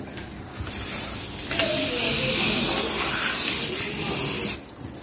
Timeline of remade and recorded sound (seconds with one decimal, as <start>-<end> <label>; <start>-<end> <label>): 0.0-1.7 recorded; 1.7-5.0 remade

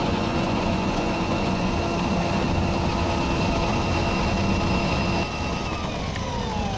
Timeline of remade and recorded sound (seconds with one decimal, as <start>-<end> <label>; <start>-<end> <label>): 0.0-1.7 remade; 1.7-6.8 recorded

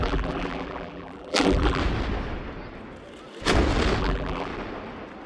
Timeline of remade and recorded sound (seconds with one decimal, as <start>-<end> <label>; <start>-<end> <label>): 0.0-1.8 remade; 1.8-4.0 recorded; 4.0-4.5 remade; 4.5-5.3 recorded

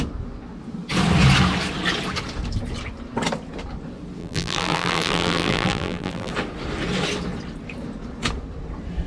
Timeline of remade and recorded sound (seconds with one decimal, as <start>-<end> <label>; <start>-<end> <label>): 0.0-4.2 recorded; 4.2-6.3 remade; 6.3-9.1 recorded

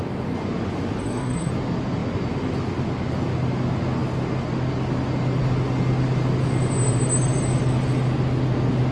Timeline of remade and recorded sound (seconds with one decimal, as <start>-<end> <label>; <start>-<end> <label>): 0.0-1.0 recorded; 1.0-1.5 remade; 1.5-8.9 recorded

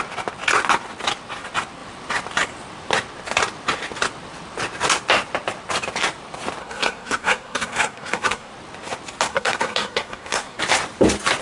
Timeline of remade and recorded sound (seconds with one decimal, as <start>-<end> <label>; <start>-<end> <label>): 0.0-6.6 recorded; 6.6-8.5 remade; 8.5-9.3 recorded; 9.3-10.6 remade; 10.6-11.4 recorded